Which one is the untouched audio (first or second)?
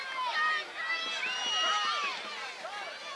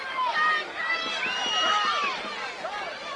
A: first